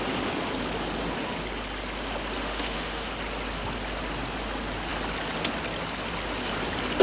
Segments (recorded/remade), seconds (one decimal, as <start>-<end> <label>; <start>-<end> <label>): 0.0-2.4 recorded; 2.4-3.1 remade; 3.1-7.0 recorded